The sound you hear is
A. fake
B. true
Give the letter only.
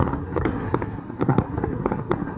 A